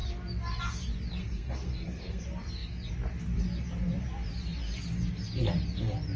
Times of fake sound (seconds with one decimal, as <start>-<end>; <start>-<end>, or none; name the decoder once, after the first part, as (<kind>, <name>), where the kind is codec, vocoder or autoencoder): 1.2-2.2 (codec, SNAC)